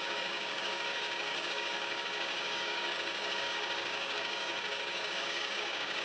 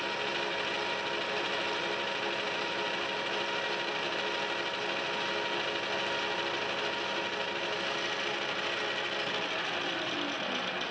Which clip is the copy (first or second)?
first